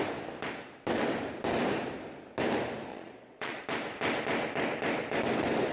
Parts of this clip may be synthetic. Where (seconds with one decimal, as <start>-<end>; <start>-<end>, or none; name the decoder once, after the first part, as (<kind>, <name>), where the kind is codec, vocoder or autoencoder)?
2.9-3.6 (vocoder, Vocos)